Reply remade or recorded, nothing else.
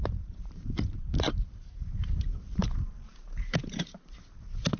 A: remade